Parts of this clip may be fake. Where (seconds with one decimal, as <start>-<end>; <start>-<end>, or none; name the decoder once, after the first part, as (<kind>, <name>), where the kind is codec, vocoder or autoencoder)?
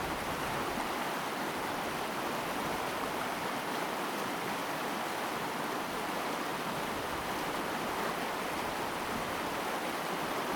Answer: 0.0-6.5 (vocoder, BigVGAN v2); 8.0-10.6